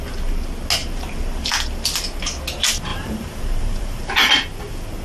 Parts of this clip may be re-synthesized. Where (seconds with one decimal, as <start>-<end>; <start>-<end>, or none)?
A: 0.8-1.5; 2.9-4.3